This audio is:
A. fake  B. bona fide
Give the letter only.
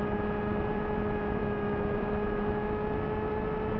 A